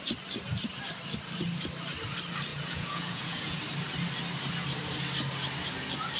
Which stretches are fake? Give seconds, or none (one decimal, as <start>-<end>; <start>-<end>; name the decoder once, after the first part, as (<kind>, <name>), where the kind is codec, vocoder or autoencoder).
2.5-3.6 (vocoder, Vocos)